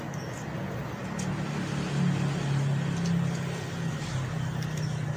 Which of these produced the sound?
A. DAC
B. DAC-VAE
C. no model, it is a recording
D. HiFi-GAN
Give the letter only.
C